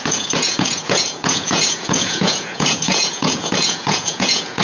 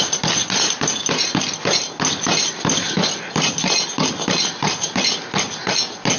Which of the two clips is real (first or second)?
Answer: second